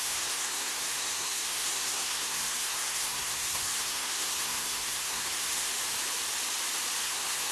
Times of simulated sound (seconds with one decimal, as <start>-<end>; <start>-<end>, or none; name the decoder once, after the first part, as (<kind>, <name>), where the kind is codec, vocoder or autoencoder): 0.0-5.7 (codec, SNAC); 7.0-7.5